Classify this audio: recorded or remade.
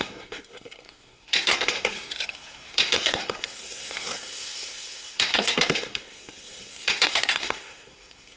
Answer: remade